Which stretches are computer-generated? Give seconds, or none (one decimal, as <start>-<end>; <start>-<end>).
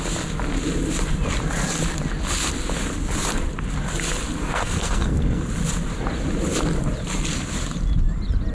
4.4-5.4